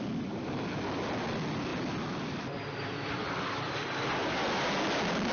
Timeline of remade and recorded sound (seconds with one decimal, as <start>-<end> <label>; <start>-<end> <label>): 0.0-5.3 recorded